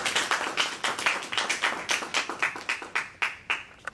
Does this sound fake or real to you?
real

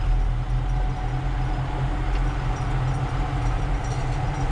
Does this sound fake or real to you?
real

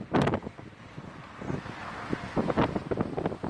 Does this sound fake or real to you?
fake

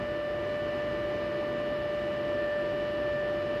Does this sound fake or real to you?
real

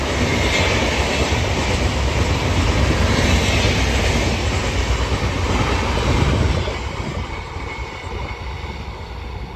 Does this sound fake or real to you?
real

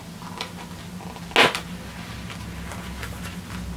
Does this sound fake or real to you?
real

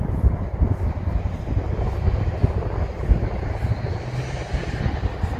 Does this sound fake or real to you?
real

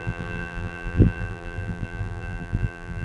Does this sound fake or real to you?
fake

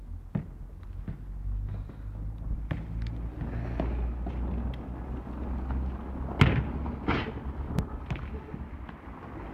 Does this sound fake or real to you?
real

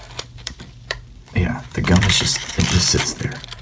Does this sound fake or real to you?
fake